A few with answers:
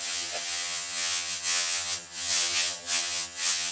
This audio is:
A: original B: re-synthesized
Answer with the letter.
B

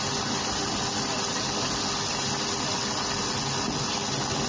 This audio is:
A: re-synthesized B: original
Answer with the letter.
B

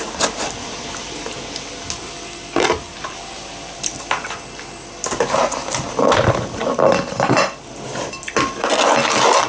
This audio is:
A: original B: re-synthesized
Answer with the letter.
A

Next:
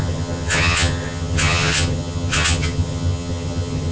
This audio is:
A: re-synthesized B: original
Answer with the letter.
A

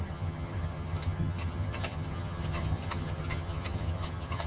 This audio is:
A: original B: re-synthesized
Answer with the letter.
B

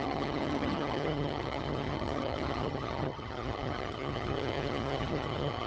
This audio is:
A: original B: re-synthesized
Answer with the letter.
B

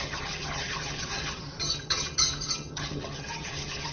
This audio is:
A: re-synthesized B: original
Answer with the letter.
A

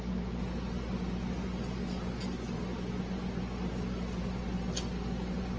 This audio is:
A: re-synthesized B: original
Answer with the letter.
B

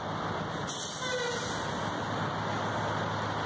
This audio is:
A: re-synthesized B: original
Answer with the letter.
B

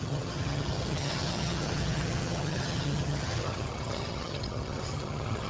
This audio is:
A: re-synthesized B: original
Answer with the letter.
A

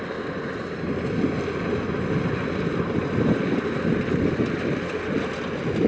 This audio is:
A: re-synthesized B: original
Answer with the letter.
B